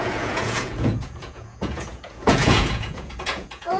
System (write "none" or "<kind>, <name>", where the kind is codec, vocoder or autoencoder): vocoder, Vocos